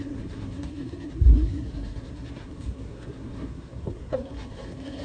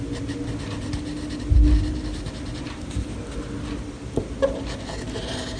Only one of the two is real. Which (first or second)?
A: second